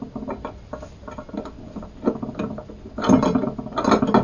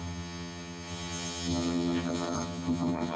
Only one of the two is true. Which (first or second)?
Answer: first